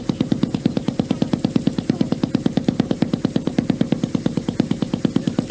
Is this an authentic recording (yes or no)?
yes